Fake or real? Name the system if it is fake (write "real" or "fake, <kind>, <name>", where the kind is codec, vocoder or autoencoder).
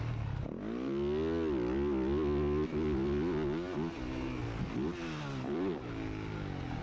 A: real